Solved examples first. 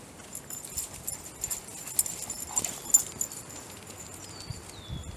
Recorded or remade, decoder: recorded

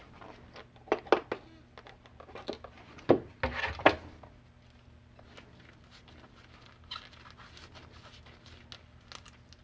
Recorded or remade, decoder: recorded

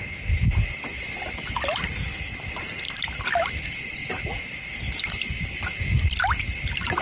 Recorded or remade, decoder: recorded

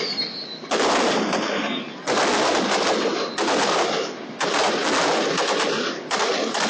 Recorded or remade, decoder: recorded